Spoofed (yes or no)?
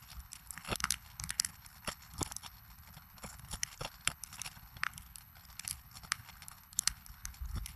yes